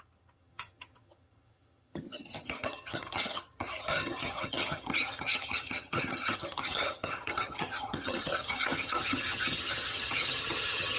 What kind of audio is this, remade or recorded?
remade